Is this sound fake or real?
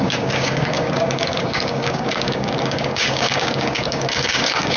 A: fake